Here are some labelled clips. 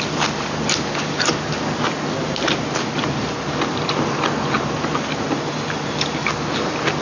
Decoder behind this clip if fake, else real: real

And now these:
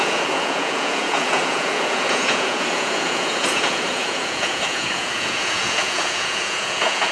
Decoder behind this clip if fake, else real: fake, vocoder, Vocos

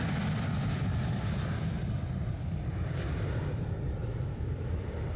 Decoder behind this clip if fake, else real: real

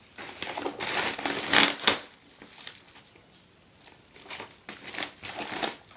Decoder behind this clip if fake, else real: real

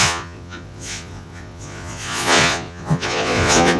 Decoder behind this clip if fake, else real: fake, vocoder, Vocos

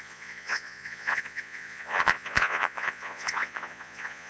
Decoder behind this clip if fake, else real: fake, vocoder, Vocos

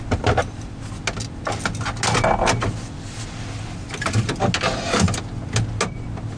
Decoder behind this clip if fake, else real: real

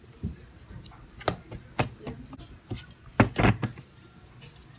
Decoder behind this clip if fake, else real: real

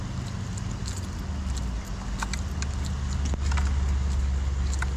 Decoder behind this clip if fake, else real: real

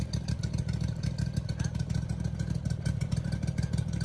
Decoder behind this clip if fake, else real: real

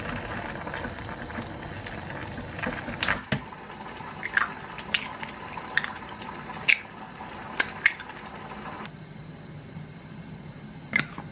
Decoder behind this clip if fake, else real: real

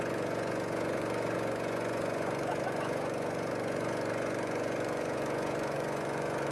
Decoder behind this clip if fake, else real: fake, vocoder, Vocos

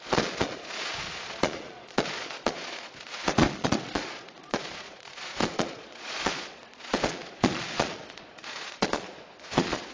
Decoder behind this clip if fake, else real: fake, vocoder, Vocos